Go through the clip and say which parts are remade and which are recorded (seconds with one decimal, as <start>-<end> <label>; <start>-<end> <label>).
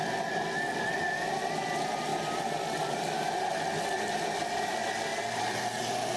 0.0-6.2 recorded